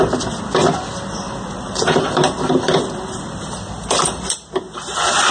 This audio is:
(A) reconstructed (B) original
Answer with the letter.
A